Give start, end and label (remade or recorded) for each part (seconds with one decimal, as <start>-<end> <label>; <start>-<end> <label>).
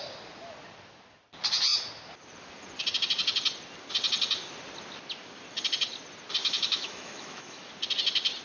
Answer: 0.0-6.4 recorded; 6.4-7.7 remade; 7.7-8.4 recorded